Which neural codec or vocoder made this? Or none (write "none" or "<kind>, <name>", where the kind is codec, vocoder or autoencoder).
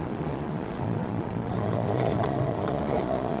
vocoder, Vocos